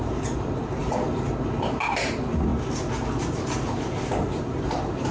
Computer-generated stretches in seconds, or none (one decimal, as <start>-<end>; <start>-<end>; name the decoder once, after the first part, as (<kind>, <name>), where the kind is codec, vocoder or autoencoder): none